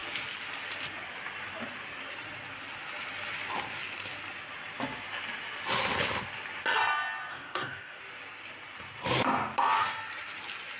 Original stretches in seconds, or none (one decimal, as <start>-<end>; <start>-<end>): 0.0-7.3; 8.0-10.8